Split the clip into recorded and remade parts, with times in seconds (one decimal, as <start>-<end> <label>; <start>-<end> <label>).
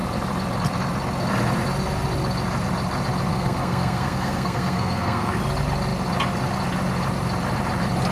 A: 0.0-3.3 recorded; 3.3-5.4 remade; 5.4-8.1 recorded